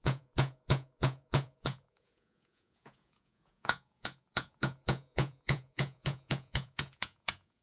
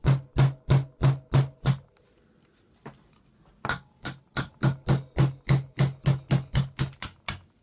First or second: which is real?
second